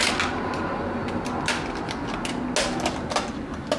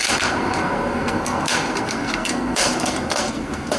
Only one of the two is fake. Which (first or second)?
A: second